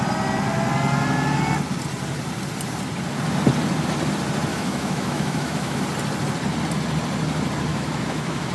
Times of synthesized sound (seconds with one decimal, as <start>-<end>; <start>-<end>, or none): 4.5-5.8; 7.7-8.5